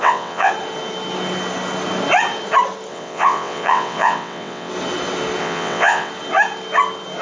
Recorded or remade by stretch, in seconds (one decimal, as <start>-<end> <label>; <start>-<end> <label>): 0.0-0.5 remade; 0.5-2.9 recorded; 2.9-4.7 remade; 4.7-5.4 recorded; 5.4-6.1 remade; 6.1-7.2 recorded